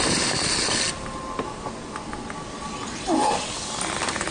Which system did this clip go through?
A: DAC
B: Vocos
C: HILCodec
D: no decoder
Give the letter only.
D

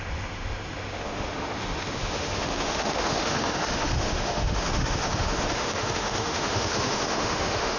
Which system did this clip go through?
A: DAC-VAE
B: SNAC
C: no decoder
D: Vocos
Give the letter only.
A